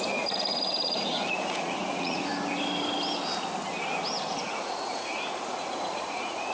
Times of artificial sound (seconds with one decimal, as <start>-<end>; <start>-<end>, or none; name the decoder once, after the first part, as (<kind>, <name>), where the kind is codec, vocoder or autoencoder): 0.0-2.3 (vocoder, Vocos); 4.3-6.5